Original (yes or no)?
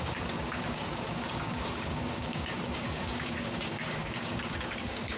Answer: no